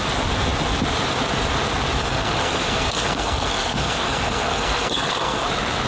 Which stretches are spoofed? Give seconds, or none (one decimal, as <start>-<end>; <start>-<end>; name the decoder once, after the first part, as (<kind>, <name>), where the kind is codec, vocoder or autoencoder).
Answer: 2.0-5.5 (codec, SNAC)